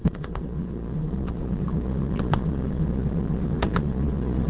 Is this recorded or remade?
remade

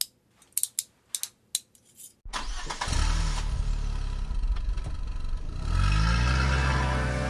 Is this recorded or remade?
recorded